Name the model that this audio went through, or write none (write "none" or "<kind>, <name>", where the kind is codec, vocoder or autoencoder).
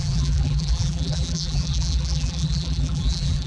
vocoder, BigVGAN v2